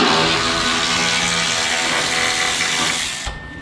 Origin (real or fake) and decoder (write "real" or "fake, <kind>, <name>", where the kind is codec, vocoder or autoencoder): real